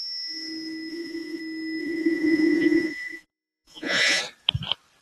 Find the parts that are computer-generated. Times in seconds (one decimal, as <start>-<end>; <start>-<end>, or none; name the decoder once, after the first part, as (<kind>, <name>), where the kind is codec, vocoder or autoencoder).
0.9-1.4 (vocoder, Vocos); 1.8-4.2